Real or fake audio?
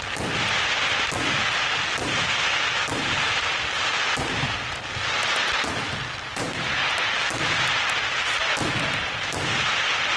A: real